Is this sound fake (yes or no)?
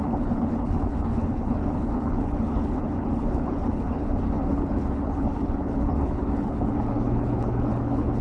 yes